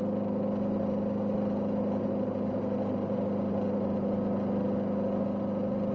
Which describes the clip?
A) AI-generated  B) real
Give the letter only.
B